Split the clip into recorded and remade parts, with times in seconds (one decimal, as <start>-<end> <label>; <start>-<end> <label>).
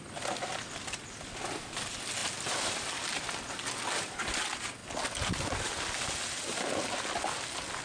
0.0-7.8 recorded